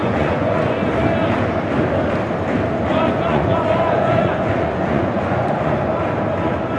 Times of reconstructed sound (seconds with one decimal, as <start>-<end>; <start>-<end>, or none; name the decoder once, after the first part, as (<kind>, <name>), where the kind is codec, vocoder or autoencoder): 0.0-0.8 (vocoder, Vocos); 2.9-5.7